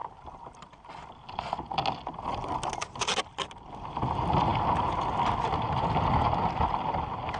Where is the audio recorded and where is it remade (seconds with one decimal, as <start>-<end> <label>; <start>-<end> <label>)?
0.0-1.4 remade; 1.4-7.4 recorded